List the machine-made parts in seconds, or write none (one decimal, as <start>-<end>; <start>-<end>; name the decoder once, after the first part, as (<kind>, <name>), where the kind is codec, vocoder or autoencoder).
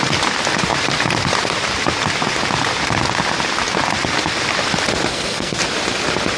5.1-5.6 (codec, SNAC)